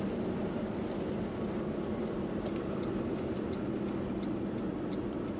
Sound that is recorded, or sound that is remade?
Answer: recorded